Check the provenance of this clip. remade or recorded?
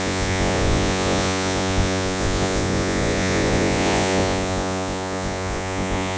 remade